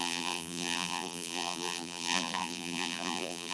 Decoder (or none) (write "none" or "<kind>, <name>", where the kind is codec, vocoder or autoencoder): vocoder, BigVGAN v2